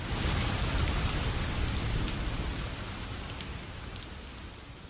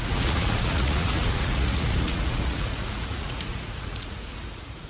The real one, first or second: first